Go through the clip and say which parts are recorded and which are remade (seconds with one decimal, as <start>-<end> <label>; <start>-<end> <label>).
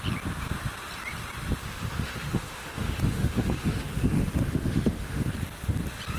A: 0.0-1.6 recorded; 1.6-5.3 remade; 5.3-6.2 recorded